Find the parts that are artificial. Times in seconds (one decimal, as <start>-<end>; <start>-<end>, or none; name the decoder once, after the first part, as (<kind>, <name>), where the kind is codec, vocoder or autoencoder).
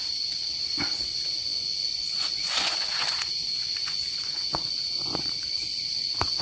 1.5-5.3 (vocoder, Vocos)